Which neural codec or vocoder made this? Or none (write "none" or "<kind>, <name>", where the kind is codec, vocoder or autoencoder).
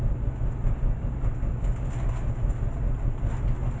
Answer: none